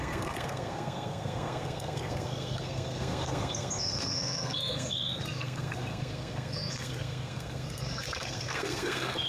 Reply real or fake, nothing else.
fake